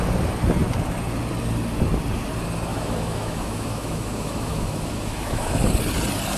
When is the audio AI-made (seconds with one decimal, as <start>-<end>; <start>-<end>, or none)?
2.7-5.6